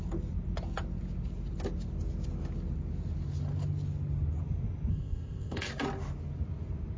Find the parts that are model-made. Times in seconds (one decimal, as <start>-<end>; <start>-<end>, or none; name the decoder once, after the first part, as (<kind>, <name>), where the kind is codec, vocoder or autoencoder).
4.9-5.7 (codec, ZipCodec)